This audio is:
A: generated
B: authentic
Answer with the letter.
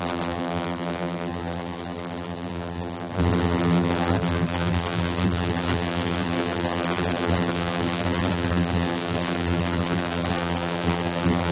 A